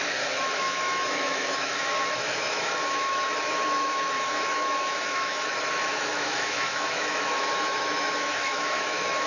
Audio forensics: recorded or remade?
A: remade